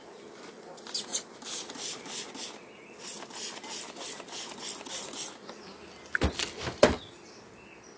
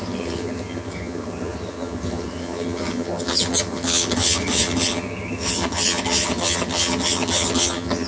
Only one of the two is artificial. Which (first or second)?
second